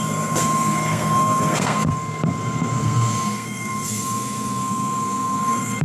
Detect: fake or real fake